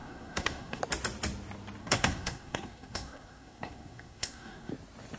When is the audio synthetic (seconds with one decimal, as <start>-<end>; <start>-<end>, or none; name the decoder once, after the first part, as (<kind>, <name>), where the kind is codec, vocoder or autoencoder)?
0.0-0.8 (codec, SNAC); 1.8-4.7